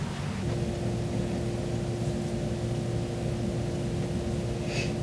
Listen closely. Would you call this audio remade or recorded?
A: recorded